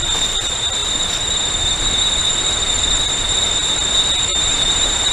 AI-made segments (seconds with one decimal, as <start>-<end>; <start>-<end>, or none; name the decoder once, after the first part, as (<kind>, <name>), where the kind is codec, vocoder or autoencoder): 4.3-5.1 (vocoder, BigVGAN v2)